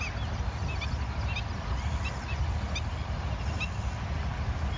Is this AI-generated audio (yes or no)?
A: no